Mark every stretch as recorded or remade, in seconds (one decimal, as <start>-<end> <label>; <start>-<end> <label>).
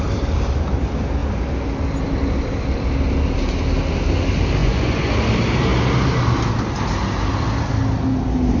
0.0-4.6 recorded; 4.6-5.1 remade; 5.1-8.6 recorded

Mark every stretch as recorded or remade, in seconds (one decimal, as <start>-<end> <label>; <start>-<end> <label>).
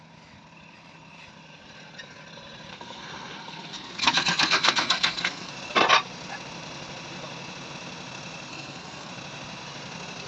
0.0-2.7 recorded; 2.7-5.5 remade; 5.5-8.5 recorded; 8.5-9.1 remade; 9.1-10.3 recorded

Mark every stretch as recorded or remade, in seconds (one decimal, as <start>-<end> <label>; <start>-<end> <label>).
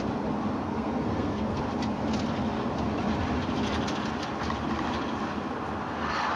0.0-0.6 recorded; 0.6-1.6 remade; 1.6-6.4 recorded